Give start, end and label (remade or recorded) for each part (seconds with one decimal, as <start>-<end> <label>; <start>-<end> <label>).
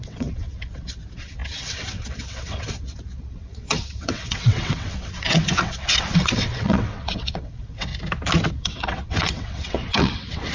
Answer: 0.0-7.9 remade; 7.9-8.5 recorded; 8.5-10.5 remade